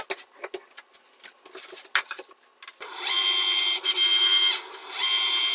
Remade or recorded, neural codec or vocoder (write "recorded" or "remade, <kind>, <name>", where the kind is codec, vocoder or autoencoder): recorded